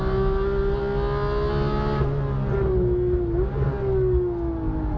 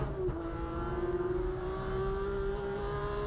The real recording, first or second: first